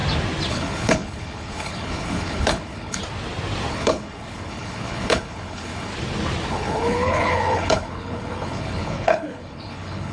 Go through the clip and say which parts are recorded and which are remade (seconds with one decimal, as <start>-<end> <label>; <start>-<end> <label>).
0.0-0.5 recorded; 0.5-3.0 remade; 3.0-3.7 recorded; 3.7-5.9 remade; 5.9-6.5 recorded; 6.5-10.1 remade